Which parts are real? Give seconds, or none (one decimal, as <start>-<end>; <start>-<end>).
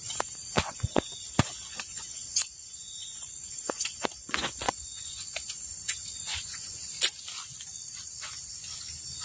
0.0-0.4; 1.1-1.9; 6.8-9.2